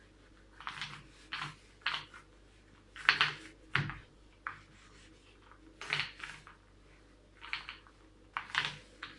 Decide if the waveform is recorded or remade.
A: recorded